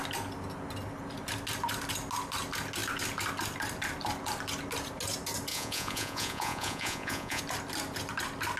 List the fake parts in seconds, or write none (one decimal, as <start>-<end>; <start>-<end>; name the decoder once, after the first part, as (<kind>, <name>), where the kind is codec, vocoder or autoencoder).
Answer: 5.5-7.4 (vocoder, Vocos)